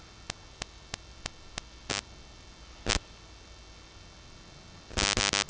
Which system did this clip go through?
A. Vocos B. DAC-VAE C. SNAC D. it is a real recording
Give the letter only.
D